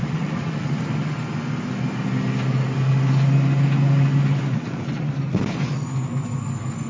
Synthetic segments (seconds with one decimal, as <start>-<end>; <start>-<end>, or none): 0.0-0.8; 4.5-5.1